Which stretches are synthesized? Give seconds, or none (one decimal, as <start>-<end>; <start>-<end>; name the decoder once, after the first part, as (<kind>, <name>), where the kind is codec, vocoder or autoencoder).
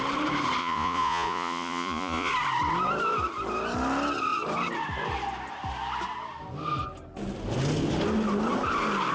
0.6-2.3 (vocoder, Vocos)